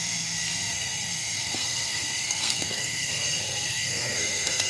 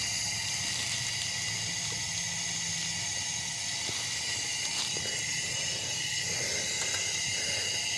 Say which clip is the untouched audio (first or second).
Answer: second